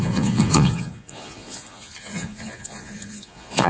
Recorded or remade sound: remade